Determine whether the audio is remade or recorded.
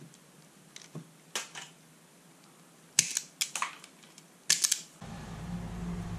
recorded